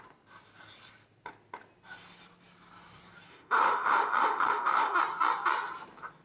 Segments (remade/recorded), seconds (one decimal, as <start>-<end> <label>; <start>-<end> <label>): 0.0-3.3 recorded; 3.3-5.0 remade; 5.0-6.2 recorded